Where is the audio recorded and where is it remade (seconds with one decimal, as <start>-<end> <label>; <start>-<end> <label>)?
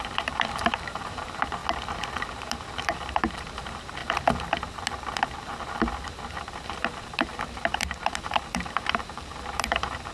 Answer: 0.0-1.6 remade; 1.6-2.2 recorded; 2.2-4.0 remade; 4.0-6.4 recorded; 6.4-10.1 remade